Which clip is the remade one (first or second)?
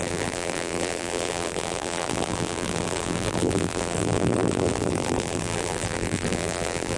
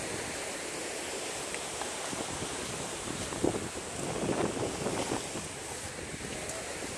first